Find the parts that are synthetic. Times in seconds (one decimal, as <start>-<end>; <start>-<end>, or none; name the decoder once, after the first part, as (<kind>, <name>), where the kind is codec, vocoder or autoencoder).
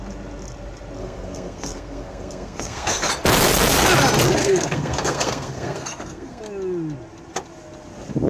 1.0-3.1 (codec, SNAC); 4.4-6.4